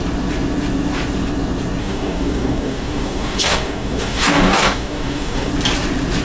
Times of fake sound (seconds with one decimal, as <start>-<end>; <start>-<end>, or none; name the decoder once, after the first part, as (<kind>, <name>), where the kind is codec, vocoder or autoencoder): 1.8-5.5 (codec, DAC)